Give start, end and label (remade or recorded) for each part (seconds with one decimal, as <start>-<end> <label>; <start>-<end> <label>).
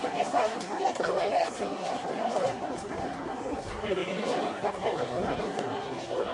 0.0-6.3 remade